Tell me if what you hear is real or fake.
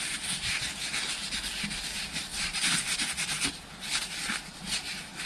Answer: real